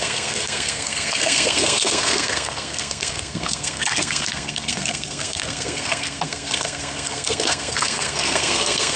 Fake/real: fake